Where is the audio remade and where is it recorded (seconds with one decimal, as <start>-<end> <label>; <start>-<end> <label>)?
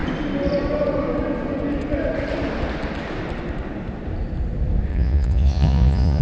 0.0-4.9 recorded; 4.9-6.2 remade